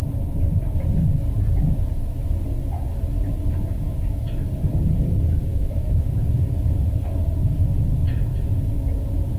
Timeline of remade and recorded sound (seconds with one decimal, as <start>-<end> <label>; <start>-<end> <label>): 0.0-5.5 recorded; 5.5-6.1 remade; 6.1-9.4 recorded